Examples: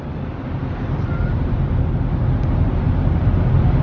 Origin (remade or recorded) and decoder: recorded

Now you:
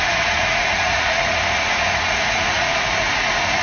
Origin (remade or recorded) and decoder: remade, vocoder, Vocos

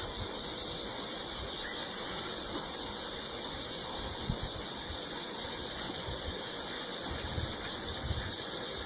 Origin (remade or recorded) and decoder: remade, vocoder, Vocos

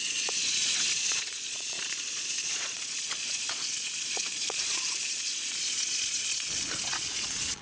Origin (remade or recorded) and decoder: remade, vocoder, Vocos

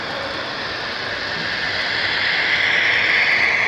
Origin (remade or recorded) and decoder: recorded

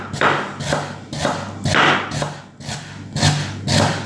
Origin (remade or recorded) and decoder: recorded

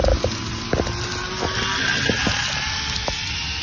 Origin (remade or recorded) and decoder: recorded